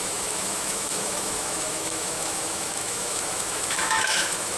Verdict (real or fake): fake